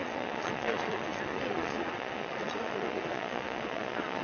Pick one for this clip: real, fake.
fake